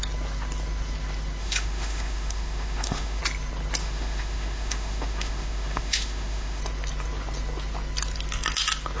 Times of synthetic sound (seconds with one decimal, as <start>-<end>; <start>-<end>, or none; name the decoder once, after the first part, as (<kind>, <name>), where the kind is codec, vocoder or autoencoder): 1.4-3.2 (autoencoder, DAC-VAE); 3.8-6.6